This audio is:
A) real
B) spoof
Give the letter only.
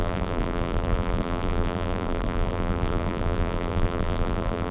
B